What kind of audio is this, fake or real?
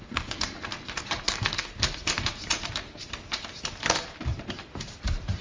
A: fake